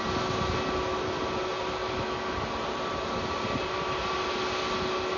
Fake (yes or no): no